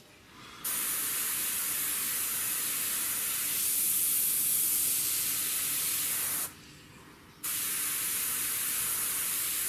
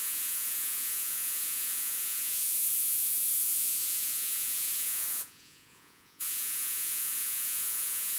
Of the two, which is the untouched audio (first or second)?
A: first